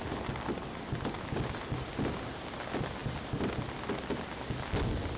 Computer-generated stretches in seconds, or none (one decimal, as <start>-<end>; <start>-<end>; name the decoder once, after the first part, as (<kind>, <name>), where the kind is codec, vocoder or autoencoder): none

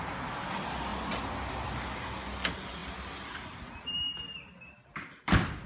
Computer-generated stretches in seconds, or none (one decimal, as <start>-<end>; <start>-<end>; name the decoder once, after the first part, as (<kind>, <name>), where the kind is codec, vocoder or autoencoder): none